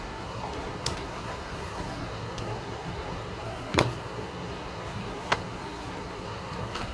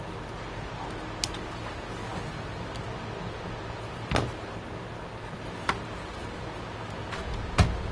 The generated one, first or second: first